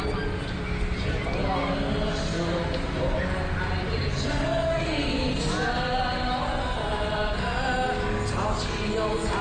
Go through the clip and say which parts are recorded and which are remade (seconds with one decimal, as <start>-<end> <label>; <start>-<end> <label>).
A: 0.0-9.4 recorded